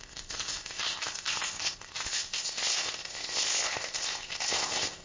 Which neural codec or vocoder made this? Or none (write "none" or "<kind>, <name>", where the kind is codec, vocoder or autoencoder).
codec, ZipCodec